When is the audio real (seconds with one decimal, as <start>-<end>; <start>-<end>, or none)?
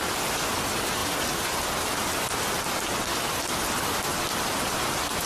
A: 0.0-5.3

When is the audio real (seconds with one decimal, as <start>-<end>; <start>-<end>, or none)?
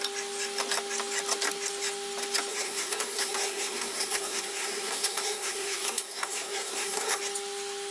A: 0.0-2.5; 7.2-7.9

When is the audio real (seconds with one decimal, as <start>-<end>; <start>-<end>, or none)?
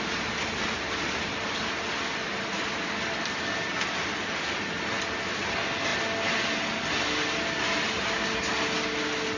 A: 0.0-9.4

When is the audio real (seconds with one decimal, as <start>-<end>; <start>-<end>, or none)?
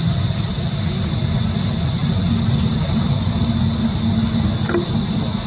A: 0.0-5.5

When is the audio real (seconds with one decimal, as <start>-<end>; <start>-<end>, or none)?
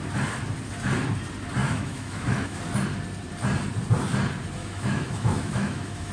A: 0.0-1.6; 2.6-4.6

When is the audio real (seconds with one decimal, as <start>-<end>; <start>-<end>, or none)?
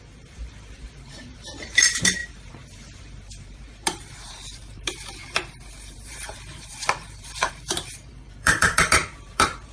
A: none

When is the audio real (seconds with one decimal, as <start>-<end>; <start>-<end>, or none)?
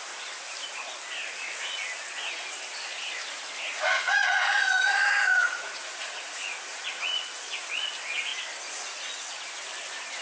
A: 0.0-3.7; 7.3-10.2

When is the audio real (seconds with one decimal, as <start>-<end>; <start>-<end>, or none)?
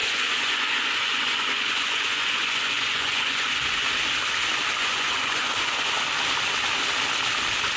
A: 3.9-4.8; 6.0-7.8